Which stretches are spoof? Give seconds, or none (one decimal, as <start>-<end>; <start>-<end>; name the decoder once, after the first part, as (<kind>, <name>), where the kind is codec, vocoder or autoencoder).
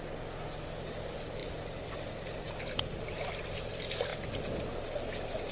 none